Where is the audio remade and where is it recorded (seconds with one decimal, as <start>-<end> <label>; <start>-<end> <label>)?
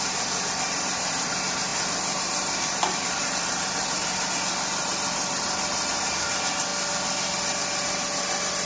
0.0-1.7 recorded; 1.7-4.3 remade; 4.3-4.9 recorded; 4.9-6.0 remade; 6.0-8.7 recorded